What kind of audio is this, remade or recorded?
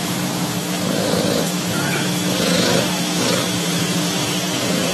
remade